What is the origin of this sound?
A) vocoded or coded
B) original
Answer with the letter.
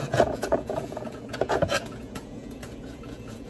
A